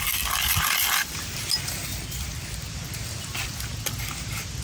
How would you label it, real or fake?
real